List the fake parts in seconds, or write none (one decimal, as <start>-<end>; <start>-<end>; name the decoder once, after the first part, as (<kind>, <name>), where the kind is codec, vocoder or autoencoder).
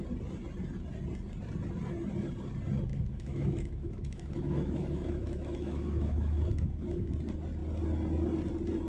2.9-7.1 (autoencoder, DAC-VAE)